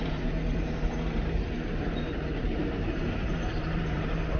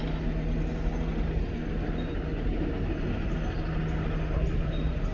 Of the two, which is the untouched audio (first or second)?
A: second